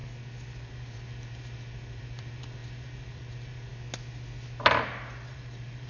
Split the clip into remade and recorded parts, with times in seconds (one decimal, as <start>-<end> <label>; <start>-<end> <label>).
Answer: 0.0-0.7 recorded; 0.7-3.7 remade; 3.7-5.3 recorded; 5.3-5.9 remade